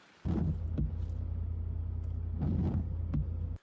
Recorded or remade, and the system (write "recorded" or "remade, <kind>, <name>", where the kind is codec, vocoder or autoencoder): recorded